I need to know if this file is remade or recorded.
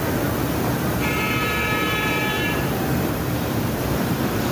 remade